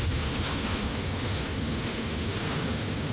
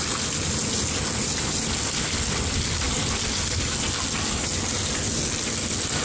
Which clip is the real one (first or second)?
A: second